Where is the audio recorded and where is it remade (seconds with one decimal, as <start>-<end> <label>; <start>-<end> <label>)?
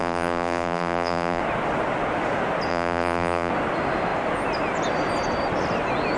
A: 0.0-1.4 remade; 1.4-2.7 recorded; 2.7-3.5 remade; 3.5-6.2 recorded